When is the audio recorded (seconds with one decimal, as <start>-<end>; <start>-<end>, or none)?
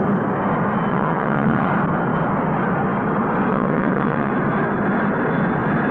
0.0-0.9; 1.7-3.5; 4.3-5.9